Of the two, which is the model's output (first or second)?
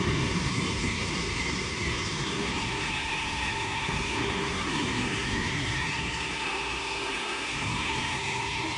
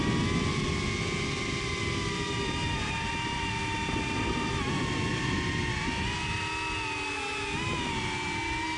first